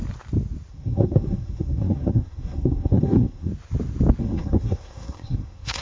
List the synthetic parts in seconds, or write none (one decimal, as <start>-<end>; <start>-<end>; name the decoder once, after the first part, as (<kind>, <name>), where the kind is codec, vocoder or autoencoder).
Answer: 0.7-3.5 (codec, SNAC); 4.2-5.8